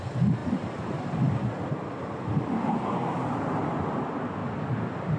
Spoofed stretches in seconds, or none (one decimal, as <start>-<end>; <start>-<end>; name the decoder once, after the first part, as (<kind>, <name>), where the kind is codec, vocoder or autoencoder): none